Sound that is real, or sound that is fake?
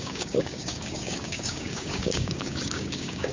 fake